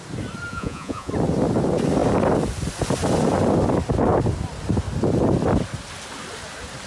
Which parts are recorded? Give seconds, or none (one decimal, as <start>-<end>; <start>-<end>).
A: 0.0-0.5; 1.1-6.9